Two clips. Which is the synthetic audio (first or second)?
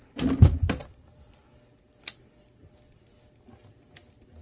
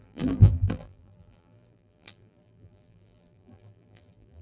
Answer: second